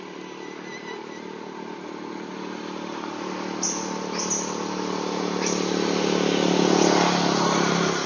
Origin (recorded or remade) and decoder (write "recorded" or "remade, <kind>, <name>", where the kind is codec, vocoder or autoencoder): recorded